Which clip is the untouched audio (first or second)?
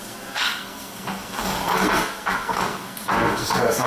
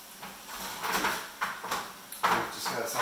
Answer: second